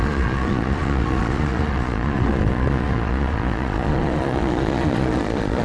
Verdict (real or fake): fake